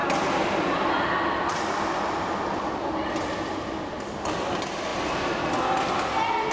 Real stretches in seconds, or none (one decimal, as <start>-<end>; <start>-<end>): 0.0-6.5